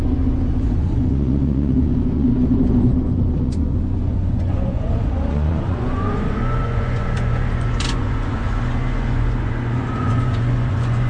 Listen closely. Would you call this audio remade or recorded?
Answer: remade